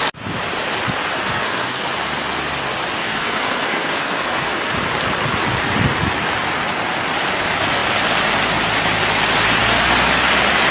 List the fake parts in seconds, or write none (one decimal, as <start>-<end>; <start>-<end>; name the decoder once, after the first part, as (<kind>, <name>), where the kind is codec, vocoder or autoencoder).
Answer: 1.1-1.8 (codec, SNAC); 3.0-4.6